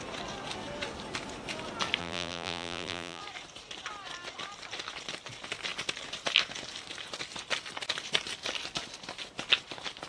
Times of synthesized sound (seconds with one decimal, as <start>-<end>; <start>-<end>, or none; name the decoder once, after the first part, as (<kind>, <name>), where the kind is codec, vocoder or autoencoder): 2.0-3.2 (vocoder, BigVGAN v2)